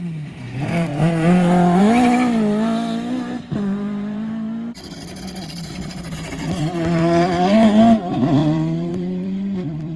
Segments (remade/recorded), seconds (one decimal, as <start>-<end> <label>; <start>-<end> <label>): 0.0-10.0 remade